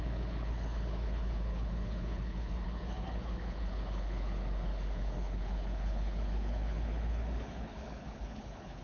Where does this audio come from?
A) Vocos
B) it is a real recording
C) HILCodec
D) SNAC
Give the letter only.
C